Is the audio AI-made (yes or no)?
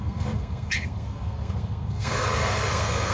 yes